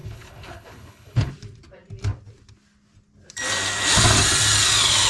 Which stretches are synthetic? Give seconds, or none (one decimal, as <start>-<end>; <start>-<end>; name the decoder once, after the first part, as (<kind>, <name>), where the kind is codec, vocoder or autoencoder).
0.0-1.3 (codec, HILCodec)